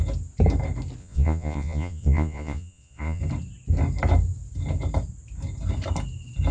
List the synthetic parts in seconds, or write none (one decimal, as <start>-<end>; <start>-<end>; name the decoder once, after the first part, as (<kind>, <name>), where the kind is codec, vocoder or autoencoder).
1.0-3.2 (vocoder, Vocos)